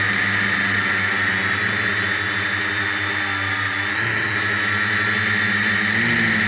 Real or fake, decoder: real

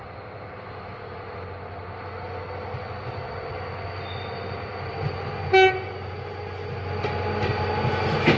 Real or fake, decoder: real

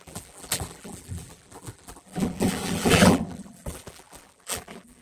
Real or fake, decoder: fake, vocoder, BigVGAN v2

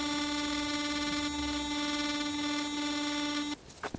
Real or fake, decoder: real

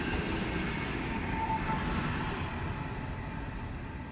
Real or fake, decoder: real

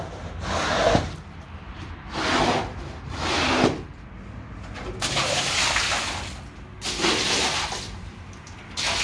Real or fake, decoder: real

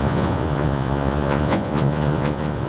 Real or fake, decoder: fake, vocoder, Vocos